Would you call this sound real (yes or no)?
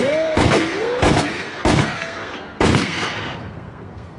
no